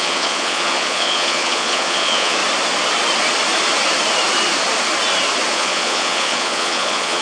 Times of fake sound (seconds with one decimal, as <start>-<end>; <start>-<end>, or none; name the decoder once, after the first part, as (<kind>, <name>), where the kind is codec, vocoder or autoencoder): 0.0-2.4 (vocoder, Vocos); 5.5-7.2